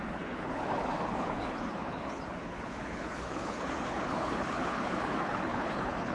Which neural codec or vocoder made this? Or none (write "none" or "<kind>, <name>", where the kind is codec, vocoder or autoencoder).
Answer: codec, HILCodec